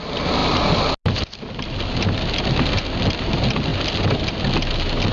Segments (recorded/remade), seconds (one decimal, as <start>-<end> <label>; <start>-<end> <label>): 0.0-5.1 recorded